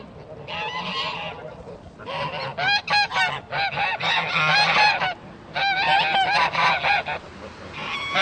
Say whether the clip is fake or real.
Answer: real